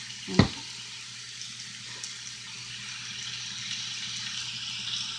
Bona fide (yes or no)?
yes